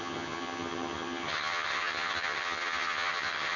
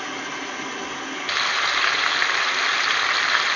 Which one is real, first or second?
second